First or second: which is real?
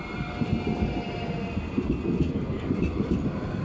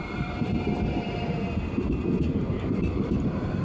first